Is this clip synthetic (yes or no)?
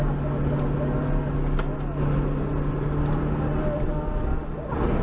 no